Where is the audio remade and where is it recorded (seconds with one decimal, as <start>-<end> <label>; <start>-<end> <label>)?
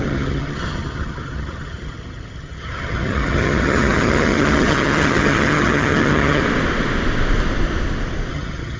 0.0-6.4 remade; 6.4-8.3 recorded; 8.3-8.8 remade